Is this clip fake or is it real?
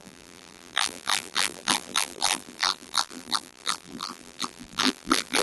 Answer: fake